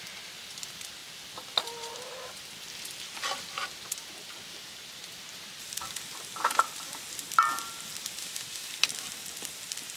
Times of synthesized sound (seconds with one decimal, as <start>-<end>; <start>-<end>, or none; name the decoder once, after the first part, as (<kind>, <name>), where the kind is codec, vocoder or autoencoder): 8.2-8.7 (autoencoder, DAC-VAE)